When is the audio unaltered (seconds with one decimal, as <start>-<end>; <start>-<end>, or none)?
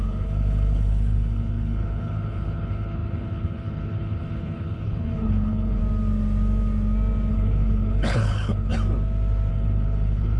5.8-7.3; 8.7-9.5